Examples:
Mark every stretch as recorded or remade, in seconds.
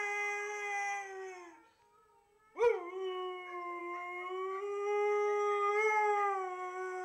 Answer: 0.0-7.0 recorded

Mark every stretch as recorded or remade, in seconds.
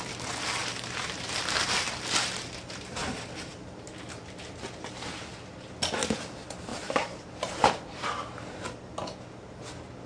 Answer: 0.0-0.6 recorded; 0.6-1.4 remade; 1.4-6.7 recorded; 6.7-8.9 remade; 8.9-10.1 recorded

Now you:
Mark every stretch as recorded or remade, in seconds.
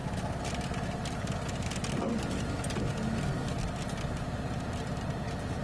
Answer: 0.0-5.6 recorded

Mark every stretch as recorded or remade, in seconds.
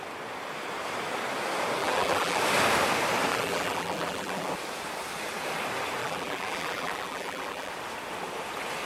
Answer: 0.0-1.8 recorded; 1.8-2.4 remade; 2.4-3.3 recorded; 3.3-4.5 remade; 4.5-6.0 recorded; 6.0-7.7 remade; 7.7-8.9 recorded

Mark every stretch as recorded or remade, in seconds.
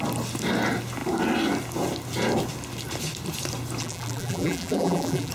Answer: 0.0-3.8 recorded; 3.8-5.3 remade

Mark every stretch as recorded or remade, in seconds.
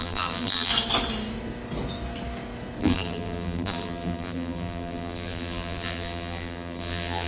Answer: 0.0-0.7 remade; 0.7-2.8 recorded; 2.8-7.3 remade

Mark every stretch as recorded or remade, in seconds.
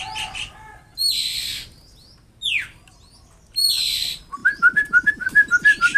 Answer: 0.0-6.0 recorded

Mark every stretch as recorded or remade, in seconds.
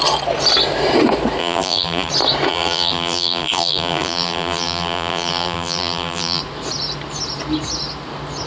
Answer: 0.0-1.4 recorded; 1.4-2.1 remade; 2.1-2.5 recorded; 2.5-6.4 remade; 6.4-8.5 recorded